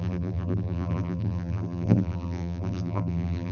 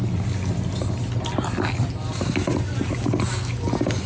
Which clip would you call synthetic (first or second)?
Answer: first